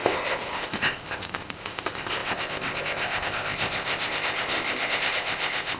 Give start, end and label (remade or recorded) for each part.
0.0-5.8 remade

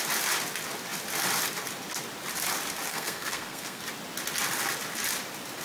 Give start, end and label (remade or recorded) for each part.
0.0-2.9 recorded; 2.9-3.8 remade; 3.8-5.6 recorded

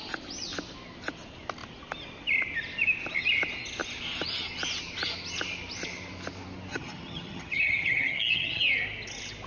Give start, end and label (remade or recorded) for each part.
0.0-6.7 recorded; 6.7-8.6 remade; 8.6-9.5 recorded